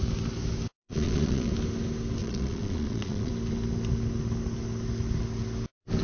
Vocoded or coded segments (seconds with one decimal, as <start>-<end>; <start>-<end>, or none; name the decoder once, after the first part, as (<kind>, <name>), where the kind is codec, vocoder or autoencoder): 0.8-1.5 (vocoder, Vocos); 2.2-3.3